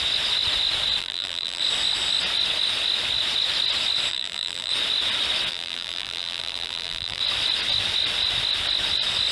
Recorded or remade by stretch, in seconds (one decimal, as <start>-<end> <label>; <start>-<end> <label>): 0.0-1.0 recorded; 1.0-1.6 remade; 1.6-4.1 recorded; 4.1-4.7 remade; 4.7-5.5 recorded; 5.5-7.2 remade; 7.2-9.3 recorded